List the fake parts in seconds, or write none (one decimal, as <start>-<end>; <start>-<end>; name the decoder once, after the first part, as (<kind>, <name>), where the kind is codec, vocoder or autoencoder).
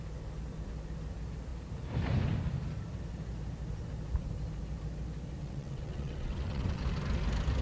5.4-6.8 (vocoder, WaveNeXt)